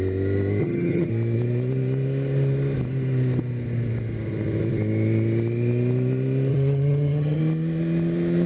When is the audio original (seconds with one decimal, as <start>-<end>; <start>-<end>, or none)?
0.0-0.6; 1.1-6.5; 7.4-8.5